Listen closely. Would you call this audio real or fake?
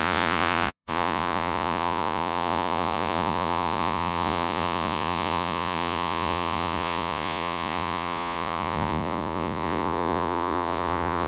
fake